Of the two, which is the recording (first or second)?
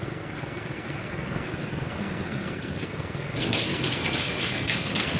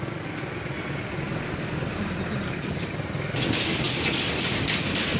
second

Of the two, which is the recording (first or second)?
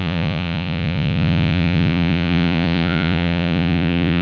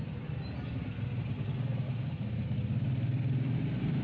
second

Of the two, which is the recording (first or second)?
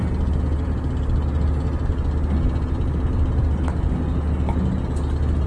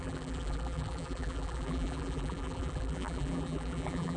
first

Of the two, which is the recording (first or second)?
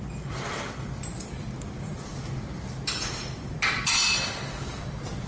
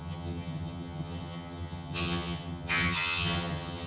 first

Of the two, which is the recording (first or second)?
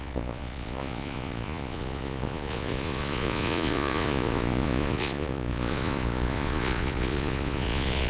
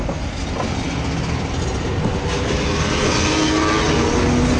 second